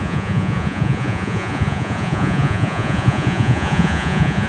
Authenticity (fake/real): fake